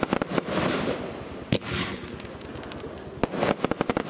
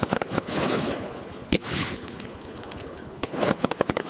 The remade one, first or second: second